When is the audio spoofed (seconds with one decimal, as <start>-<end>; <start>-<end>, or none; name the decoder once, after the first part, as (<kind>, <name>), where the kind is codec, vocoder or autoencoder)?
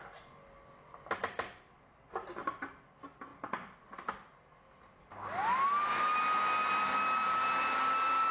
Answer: none